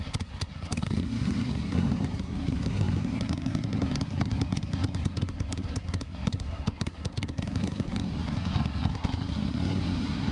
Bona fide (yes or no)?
no